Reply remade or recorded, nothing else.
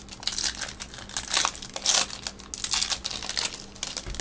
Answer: recorded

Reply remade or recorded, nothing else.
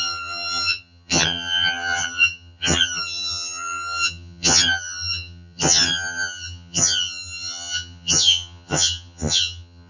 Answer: remade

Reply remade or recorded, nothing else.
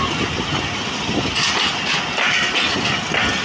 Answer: recorded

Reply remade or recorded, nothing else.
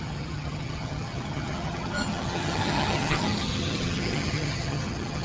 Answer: remade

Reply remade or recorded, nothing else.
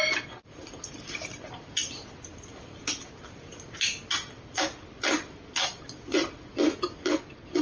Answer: recorded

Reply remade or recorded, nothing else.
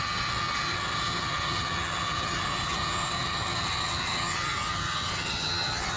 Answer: remade